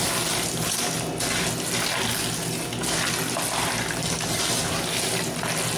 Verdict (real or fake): real